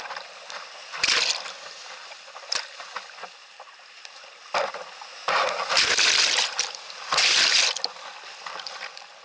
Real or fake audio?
real